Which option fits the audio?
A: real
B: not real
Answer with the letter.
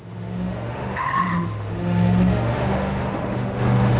B